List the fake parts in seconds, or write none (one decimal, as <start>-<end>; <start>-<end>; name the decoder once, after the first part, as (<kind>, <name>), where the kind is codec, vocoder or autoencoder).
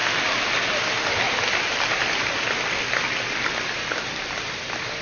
4.1-5.0 (vocoder, BigVGAN v2)